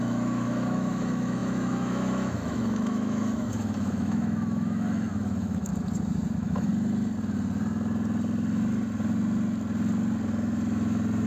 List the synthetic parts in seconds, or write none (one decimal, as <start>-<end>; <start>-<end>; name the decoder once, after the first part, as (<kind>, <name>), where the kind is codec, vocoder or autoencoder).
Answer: 0.0-5.7 (autoencoder, DAC-VAE); 6.3-6.7